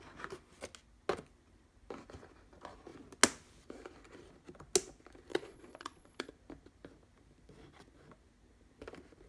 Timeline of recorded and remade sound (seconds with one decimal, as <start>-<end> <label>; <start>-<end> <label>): 0.0-5.3 recorded; 5.3-6.3 remade; 6.3-9.3 recorded